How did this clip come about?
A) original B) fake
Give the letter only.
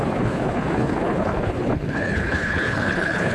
B